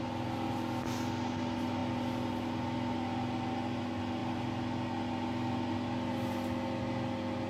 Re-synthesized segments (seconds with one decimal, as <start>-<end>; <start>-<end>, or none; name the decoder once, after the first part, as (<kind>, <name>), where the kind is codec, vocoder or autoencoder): none